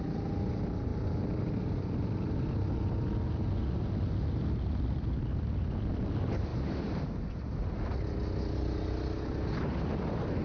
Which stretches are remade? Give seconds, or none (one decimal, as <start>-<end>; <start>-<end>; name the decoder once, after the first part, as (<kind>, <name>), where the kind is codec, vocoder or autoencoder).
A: 6.5-7.1 (vocoder, BigVGAN v2)